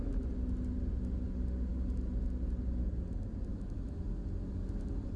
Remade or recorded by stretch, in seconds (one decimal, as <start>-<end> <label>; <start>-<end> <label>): 0.0-3.5 recorded; 3.5-4.0 remade; 4.0-5.2 recorded